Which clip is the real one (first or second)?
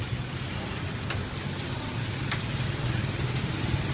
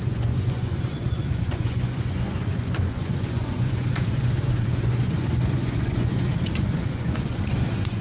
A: first